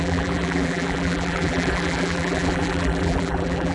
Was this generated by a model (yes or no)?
yes